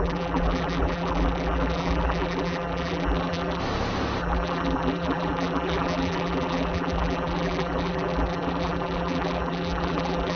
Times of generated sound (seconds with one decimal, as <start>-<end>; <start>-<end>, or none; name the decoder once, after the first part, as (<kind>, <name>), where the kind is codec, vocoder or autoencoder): 0.0-3.6 (vocoder, BigVGAN v2); 4.2-10.4